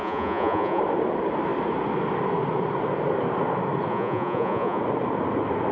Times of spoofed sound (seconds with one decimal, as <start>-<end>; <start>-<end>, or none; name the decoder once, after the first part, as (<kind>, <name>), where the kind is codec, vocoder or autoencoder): 0.0-0.8 (vocoder, Vocos); 3.9-4.8